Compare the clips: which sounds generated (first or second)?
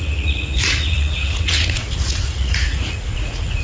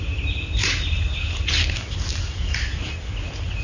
first